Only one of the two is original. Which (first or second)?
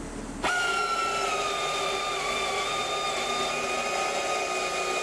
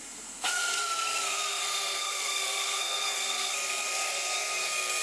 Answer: first